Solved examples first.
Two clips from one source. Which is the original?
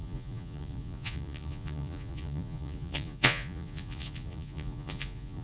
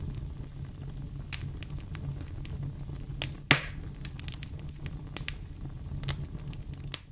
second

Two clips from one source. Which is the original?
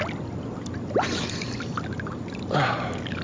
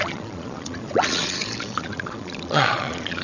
first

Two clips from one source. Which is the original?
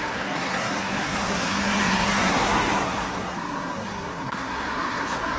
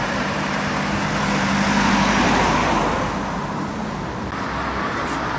second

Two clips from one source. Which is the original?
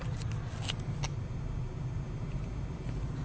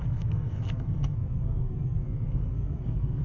first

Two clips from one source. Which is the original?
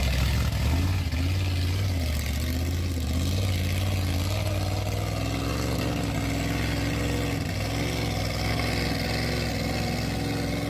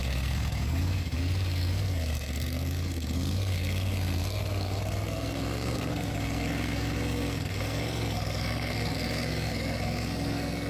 first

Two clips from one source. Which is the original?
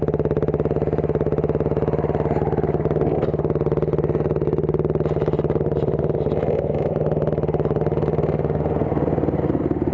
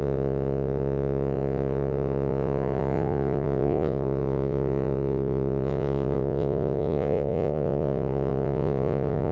first